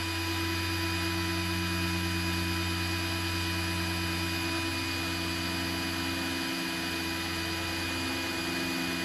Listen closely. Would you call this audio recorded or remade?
recorded